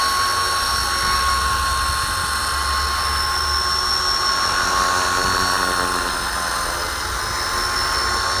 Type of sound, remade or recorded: recorded